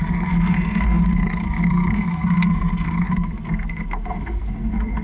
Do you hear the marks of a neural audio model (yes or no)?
yes